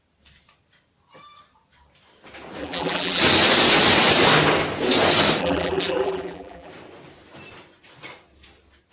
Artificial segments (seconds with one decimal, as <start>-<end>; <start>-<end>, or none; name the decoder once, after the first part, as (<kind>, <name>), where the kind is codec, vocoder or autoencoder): 2.6-3.2 (vocoder, BigVGAN v2); 5.4-6.7

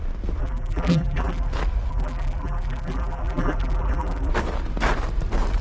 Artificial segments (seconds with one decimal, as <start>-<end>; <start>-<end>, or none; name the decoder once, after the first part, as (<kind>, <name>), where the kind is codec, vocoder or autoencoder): 0.4-1.5 (vocoder, BigVGAN v2); 1.9-4.3

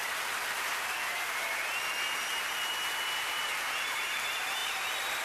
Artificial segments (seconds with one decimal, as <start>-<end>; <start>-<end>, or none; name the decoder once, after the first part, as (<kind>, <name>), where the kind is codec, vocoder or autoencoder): 3.1-3.5 (vocoder, BigVGAN v2); 4.0-5.2

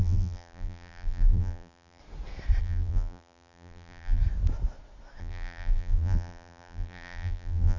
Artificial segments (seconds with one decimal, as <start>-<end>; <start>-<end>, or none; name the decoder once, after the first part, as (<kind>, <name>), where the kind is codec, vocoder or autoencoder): 0.0-2.0 (vocoder, BigVGAN v2); 2.6-4.2; 5.2-7.8

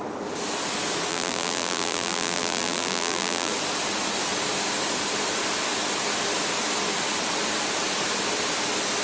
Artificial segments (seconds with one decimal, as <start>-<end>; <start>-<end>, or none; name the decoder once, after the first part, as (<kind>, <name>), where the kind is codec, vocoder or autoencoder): 1.1-3.5 (vocoder, BigVGAN v2)